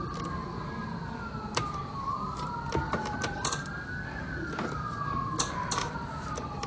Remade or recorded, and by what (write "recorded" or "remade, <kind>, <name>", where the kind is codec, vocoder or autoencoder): recorded